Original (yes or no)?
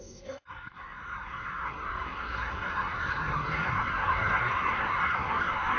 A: no